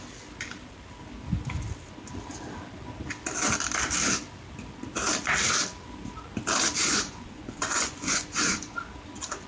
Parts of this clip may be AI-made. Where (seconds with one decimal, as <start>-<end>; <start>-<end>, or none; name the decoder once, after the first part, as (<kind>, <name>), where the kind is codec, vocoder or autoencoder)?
6.8-8.8 (vocoder, Vocos)